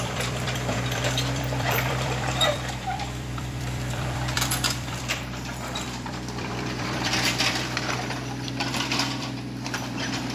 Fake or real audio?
fake